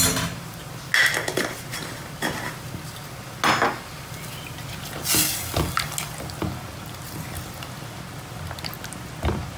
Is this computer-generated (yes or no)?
no